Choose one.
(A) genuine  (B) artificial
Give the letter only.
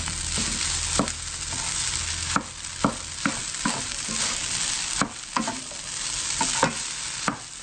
A